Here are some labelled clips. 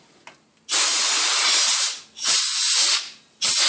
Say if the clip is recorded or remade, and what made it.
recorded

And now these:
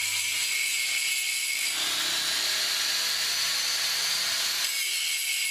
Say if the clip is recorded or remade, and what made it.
recorded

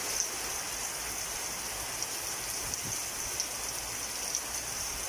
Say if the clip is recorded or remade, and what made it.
recorded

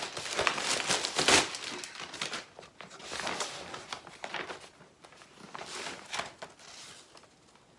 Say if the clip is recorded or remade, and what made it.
recorded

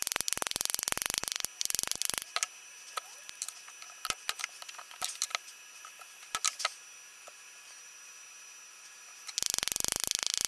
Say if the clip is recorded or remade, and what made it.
recorded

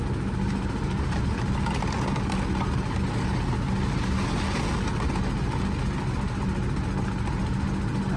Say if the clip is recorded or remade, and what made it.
recorded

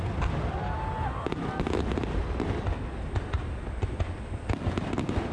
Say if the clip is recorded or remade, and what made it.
recorded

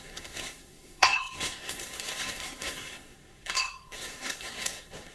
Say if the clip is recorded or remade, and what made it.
remade, codec, SNAC